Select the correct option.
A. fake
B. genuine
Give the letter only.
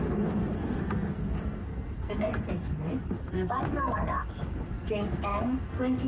A